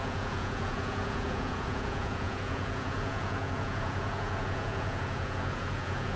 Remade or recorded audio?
remade